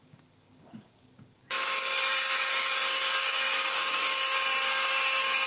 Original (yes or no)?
no